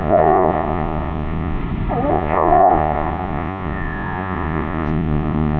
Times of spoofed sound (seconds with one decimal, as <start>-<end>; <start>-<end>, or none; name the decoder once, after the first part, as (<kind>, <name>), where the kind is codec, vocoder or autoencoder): 0.0-1.6 (vocoder, Vocos); 2.1-5.6